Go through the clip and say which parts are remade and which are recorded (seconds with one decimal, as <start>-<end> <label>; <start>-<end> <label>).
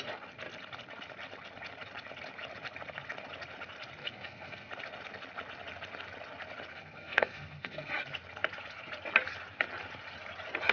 0.0-4.0 recorded; 4.0-4.7 remade; 4.7-6.7 recorded; 6.7-7.9 remade; 7.9-10.7 recorded